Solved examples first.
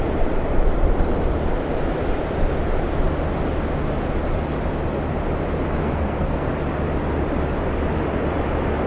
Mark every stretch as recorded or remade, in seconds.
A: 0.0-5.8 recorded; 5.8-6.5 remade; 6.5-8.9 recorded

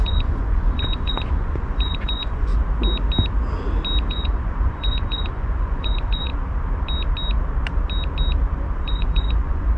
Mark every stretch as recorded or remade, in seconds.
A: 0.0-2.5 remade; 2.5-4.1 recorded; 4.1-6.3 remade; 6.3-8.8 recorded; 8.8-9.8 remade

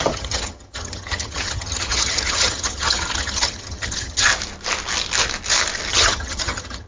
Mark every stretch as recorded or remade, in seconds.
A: 0.0-4.3 remade; 4.3-5.9 recorded; 5.9-6.9 remade